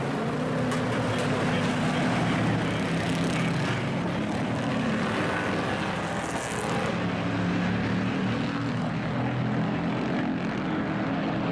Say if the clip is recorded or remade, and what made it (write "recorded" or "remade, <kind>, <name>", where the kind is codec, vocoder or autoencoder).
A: recorded